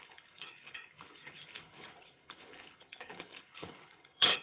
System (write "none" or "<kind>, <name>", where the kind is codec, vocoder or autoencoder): codec, HILCodec